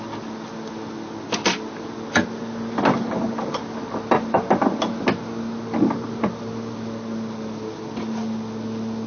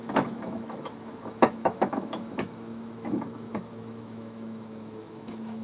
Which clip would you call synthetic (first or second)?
second